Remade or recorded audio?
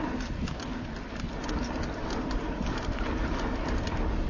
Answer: recorded